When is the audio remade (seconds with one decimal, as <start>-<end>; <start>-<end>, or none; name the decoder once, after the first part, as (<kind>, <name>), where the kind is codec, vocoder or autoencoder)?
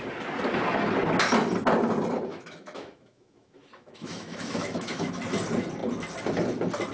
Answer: 2.3-5.1 (autoencoder, DAC-VAE)